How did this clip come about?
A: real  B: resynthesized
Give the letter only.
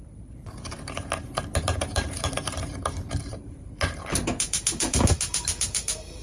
B